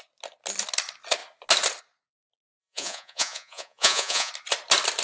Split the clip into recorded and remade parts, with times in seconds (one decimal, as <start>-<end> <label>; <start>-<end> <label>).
0.0-2.6 recorded; 2.6-4.3 remade; 4.3-5.0 recorded